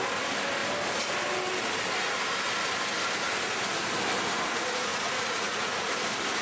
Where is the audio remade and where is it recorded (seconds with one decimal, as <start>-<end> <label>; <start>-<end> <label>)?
0.0-4.9 recorded; 4.9-5.9 remade; 5.9-6.4 recorded

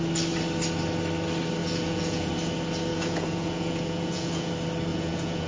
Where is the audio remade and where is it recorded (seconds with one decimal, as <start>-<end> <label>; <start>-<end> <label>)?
0.0-1.6 recorded; 1.6-2.3 remade; 2.3-2.9 recorded; 2.9-4.5 remade; 4.5-4.9 recorded; 4.9-5.5 remade

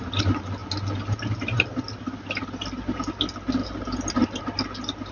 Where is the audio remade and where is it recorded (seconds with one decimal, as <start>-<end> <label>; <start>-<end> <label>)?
0.0-3.6 recorded; 3.6-4.4 remade; 4.4-5.1 recorded

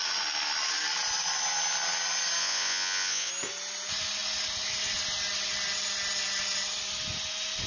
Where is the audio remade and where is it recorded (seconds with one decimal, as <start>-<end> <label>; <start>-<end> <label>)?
0.0-2.4 recorded; 2.4-3.3 remade; 3.3-7.7 recorded

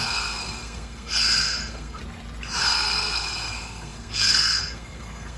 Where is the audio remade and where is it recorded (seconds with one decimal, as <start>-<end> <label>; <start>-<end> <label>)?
0.0-2.0 remade; 2.0-2.6 recorded; 2.6-5.4 remade

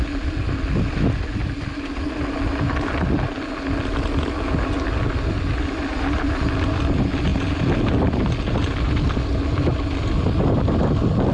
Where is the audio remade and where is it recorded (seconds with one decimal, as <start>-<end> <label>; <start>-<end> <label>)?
0.0-11.3 recorded